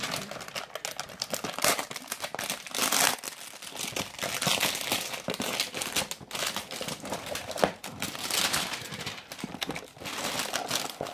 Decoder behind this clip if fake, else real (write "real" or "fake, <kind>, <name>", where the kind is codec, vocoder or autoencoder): real